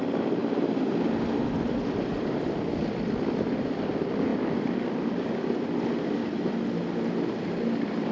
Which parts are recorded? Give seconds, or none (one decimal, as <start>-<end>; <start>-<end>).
0.0-8.1

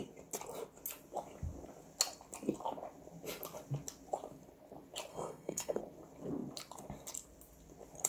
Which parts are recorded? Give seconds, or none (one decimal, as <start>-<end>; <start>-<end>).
0.0-5.1; 5.8-8.1

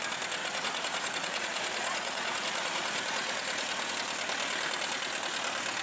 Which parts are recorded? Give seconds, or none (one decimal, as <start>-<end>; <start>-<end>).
0.0-0.4; 3.9-5.8

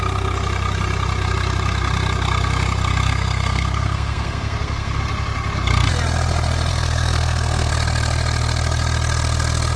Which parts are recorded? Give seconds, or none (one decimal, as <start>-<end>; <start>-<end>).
0.0-3.1; 5.0-6.7; 7.7-9.8

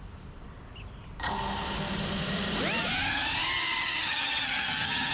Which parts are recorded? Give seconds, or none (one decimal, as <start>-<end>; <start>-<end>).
0.0-3.8

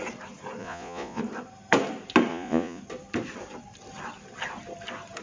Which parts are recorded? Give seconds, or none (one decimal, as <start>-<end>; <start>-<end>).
0.0-0.6; 1.2-2.3; 2.8-5.2